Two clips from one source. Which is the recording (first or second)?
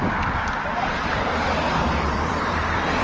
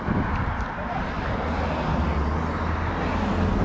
second